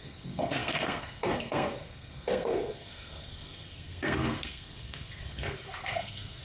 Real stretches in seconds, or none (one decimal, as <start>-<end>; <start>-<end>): none